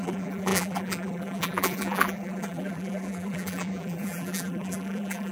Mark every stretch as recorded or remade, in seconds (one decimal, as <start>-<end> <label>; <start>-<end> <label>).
0.0-5.3 remade